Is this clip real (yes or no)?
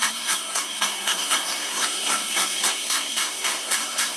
no